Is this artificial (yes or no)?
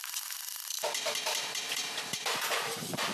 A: yes